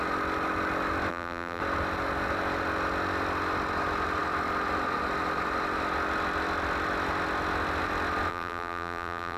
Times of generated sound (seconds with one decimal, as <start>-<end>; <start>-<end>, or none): 1.1-1.6; 8.3-9.4